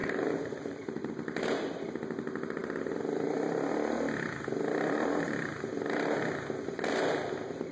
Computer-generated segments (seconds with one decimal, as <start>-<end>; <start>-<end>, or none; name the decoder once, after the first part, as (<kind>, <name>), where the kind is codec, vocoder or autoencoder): 0.0-1.1 (vocoder, BigVGAN v2)